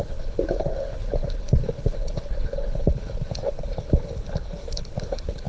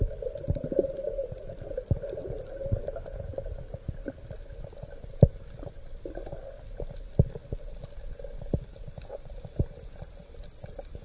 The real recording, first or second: second